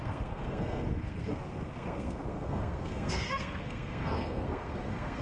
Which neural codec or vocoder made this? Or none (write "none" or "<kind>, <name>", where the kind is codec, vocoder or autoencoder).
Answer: codec, SNAC